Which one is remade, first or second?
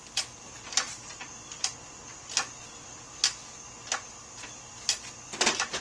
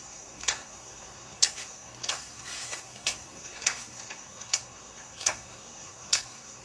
second